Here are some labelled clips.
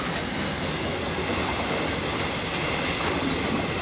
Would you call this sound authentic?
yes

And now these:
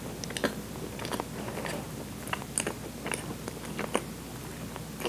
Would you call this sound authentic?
yes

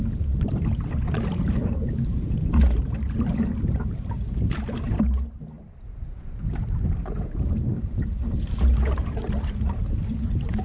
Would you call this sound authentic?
no